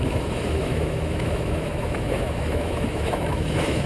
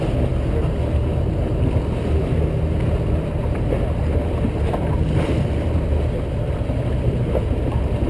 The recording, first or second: second